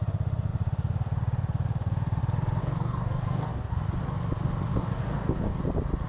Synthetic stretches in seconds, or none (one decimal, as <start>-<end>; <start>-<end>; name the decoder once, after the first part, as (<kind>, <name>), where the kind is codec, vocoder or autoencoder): 2.6-3.7 (codec, DAC); 4.7-5.6